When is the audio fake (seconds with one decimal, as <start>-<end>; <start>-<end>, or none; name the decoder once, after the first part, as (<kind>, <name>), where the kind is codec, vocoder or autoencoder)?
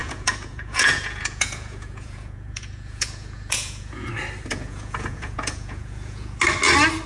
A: 0.0-4.1 (vocoder, Vocos); 4.5-6.4